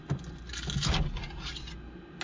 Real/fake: real